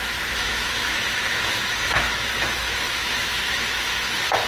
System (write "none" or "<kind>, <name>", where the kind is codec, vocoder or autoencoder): autoencoder, DAC-VAE